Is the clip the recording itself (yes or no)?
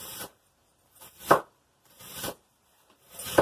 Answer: no